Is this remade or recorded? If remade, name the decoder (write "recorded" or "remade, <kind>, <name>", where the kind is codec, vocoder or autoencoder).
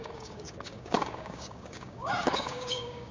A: remade, codec, DAC